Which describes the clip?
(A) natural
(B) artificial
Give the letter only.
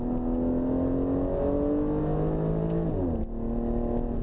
A